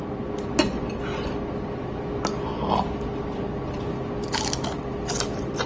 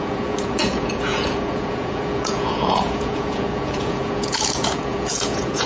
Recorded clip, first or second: first